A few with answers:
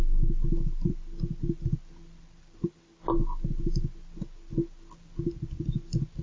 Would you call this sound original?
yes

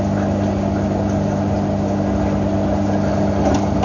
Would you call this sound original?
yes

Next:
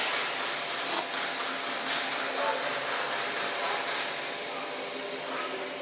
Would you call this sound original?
yes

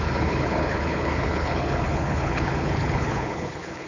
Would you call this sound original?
no